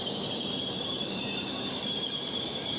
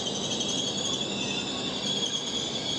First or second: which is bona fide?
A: second